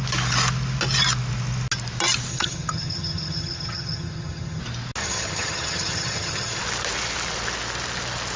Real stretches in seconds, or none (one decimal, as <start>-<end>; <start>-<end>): 0.0-2.3; 4.6-5.0; 6.6-8.4